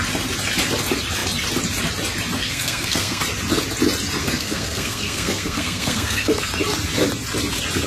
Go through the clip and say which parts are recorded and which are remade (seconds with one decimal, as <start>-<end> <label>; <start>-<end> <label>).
0.0-2.4 recorded; 2.4-3.2 remade; 3.2-4.2 recorded; 4.2-6.5 remade; 6.5-7.9 recorded